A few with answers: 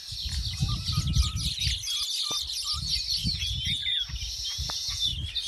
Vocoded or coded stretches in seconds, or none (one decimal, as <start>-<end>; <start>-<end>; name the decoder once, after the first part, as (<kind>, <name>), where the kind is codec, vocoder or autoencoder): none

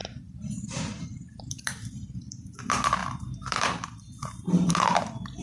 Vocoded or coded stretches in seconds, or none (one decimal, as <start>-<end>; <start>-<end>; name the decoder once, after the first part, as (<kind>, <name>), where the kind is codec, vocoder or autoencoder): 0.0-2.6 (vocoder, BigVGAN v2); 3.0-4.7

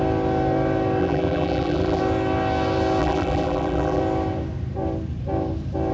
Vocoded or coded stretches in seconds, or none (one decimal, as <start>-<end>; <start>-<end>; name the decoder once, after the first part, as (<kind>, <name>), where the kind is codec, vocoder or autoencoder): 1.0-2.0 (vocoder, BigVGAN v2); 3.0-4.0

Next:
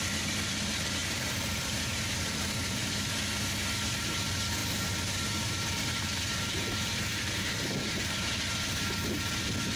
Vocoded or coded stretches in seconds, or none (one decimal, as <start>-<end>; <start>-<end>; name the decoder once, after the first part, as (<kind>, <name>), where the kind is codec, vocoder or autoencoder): 1.0-3.2 (vocoder, BigVGAN v2); 4.6-8.5